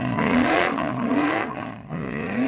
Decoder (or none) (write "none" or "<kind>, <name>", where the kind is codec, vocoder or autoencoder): vocoder, Vocos